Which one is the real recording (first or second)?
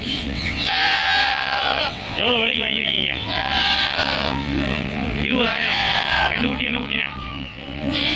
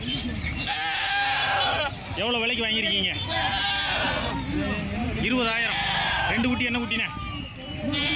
second